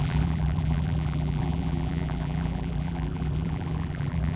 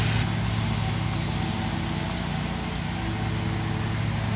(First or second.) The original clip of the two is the second